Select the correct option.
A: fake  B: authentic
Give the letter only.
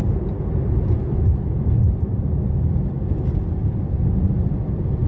B